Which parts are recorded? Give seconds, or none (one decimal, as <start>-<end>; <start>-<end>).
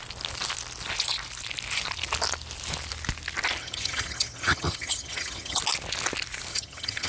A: 0.0-3.6; 5.6-6.5